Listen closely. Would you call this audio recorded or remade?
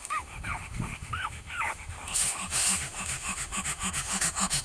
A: remade